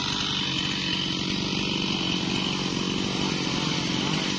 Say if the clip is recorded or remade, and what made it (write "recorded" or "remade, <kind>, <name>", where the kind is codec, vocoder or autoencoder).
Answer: recorded